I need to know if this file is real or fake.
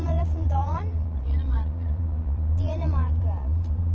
fake